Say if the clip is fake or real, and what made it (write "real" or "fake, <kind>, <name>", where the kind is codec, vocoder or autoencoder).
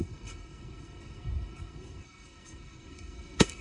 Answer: fake, codec, SNAC